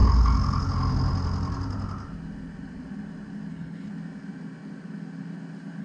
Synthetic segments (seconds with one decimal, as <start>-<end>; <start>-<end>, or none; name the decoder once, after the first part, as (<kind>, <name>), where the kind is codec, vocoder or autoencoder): 3.5-3.9 (codec, HILCodec)